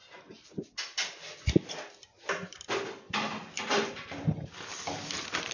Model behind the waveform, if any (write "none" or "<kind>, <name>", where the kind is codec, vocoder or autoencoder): vocoder, BigVGAN v2